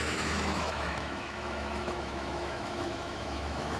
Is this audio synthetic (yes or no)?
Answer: yes